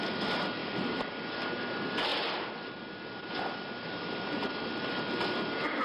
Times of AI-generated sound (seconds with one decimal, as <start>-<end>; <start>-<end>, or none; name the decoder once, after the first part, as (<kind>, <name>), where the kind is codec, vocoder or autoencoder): none

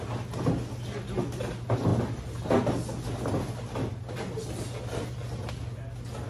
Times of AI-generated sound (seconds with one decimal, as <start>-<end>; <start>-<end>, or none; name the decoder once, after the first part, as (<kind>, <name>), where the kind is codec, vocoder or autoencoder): none

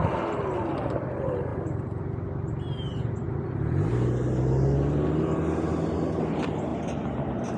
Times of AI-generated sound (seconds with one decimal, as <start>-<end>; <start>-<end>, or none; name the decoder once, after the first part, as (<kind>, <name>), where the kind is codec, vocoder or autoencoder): 6.7-7.6 (vocoder, BigVGAN v2)

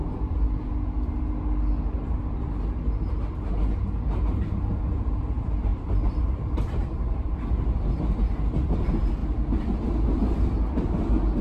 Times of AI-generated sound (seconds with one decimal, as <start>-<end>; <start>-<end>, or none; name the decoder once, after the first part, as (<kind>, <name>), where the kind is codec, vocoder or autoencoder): 5.7-8.0 (vocoder, BigVGAN v2); 9.2-9.8